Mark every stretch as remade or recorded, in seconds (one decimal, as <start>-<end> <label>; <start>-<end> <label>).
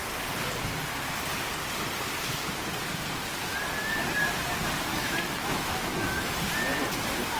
0.0-4.9 recorded; 4.9-6.3 remade; 6.3-7.4 recorded